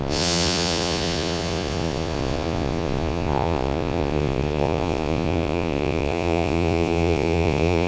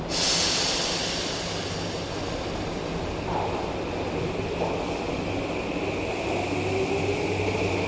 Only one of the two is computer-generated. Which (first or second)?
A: first